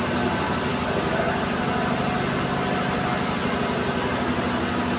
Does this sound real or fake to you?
real